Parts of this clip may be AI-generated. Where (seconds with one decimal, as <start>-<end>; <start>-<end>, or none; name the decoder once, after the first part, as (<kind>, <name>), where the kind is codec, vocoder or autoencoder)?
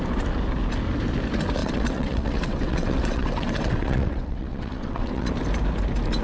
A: 1.6-5.3 (vocoder, WaveNeXt)